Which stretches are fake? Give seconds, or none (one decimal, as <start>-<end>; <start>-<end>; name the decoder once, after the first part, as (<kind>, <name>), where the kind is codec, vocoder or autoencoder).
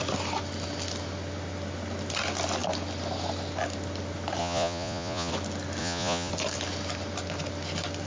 4.4-5.3 (vocoder, Vocos); 5.8-6.3